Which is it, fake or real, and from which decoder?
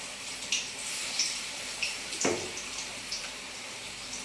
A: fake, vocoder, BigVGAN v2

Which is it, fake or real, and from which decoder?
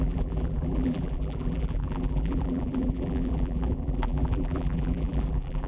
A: fake, vocoder, BigVGAN v2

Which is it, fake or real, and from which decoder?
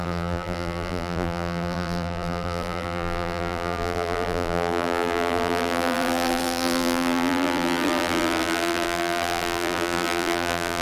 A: fake, vocoder, BigVGAN v2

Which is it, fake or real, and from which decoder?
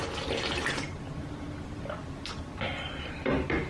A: real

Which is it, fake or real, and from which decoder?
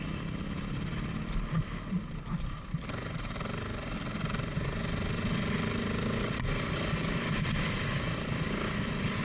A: real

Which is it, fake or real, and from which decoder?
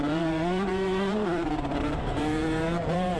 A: fake, vocoder, BigVGAN v2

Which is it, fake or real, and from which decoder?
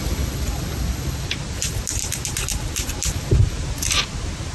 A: real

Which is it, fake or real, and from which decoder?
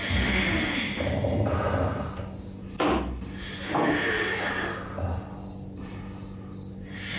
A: real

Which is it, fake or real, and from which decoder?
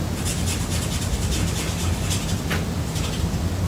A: real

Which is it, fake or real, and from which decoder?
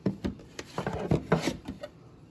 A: fake, vocoder, BigVGAN v2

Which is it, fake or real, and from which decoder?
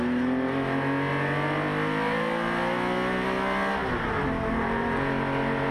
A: real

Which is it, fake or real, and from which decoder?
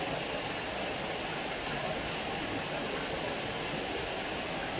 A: real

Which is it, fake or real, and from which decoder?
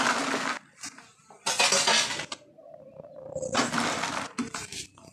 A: real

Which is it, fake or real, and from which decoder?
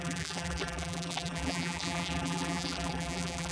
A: fake, vocoder, BigVGAN v2